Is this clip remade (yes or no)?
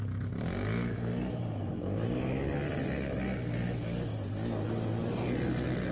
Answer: no